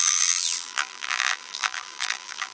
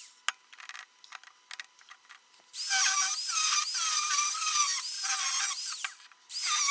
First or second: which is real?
second